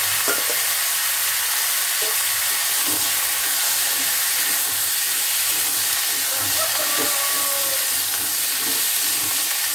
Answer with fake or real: real